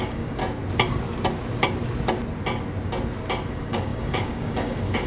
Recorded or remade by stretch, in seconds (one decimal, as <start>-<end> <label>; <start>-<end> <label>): 0.0-0.4 remade; 0.4-3.5 recorded; 3.5-5.1 remade